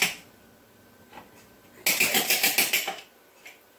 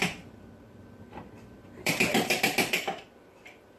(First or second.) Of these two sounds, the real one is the first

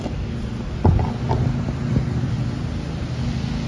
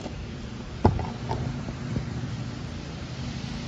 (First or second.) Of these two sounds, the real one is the first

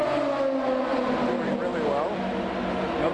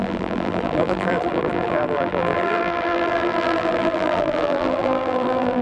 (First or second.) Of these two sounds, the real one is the first